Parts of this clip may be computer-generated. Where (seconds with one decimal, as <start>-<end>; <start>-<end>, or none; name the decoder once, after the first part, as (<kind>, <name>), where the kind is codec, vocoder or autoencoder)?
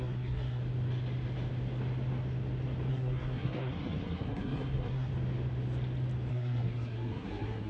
0.0-0.6 (codec, SNAC); 2.9-5.1; 6.3-7.7